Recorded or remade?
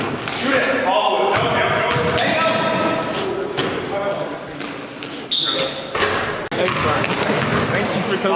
recorded